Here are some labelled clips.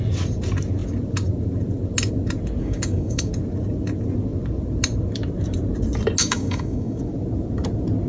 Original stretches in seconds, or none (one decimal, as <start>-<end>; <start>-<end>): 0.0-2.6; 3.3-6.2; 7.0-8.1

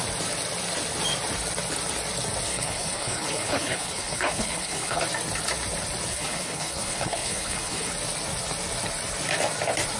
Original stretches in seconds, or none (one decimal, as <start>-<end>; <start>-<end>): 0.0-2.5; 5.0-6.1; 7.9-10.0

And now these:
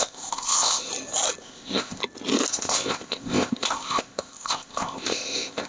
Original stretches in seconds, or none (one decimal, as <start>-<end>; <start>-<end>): 0.9-1.4; 2.0-2.5

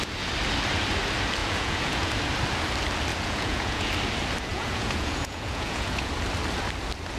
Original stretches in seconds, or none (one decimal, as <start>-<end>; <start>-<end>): 0.0-1.4; 2.1-3.1; 3.9-4.5; 6.1-7.2

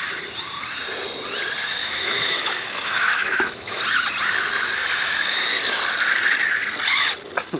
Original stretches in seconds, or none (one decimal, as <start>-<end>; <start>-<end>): 0.0-1.8; 3.8-7.6